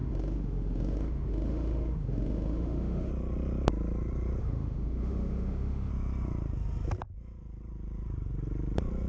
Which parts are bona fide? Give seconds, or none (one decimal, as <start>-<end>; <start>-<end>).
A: 3.1-4.4; 5.9-9.1